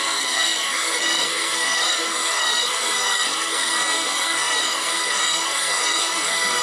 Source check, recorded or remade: remade